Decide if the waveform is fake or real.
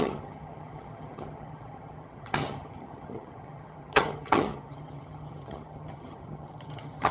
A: fake